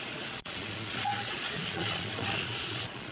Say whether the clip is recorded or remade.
remade